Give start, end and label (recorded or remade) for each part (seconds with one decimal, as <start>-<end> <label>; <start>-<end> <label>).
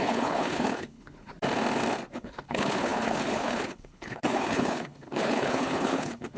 0.0-1.3 remade; 1.3-2.1 recorded; 2.1-6.4 remade